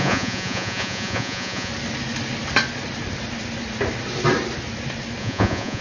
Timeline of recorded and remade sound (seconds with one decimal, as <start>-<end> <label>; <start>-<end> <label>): 0.0-1.7 remade; 1.7-5.2 recorded; 5.2-5.8 remade